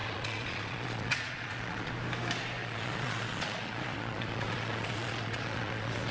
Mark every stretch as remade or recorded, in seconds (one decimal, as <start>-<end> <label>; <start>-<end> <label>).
0.0-1.9 remade; 1.9-2.6 recorded; 2.6-6.1 remade